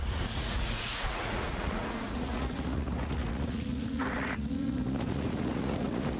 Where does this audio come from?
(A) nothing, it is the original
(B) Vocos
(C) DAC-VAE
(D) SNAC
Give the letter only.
B